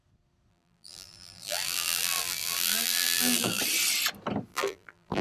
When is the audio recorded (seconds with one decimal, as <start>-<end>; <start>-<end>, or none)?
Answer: 0.0-0.5; 3.6-4.5